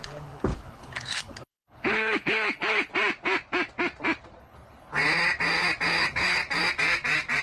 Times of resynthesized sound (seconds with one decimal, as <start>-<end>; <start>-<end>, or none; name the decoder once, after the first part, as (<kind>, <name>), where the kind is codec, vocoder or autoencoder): 0.0-2.9 (codec, HILCodec); 4.4-4.9; 6.0-6.4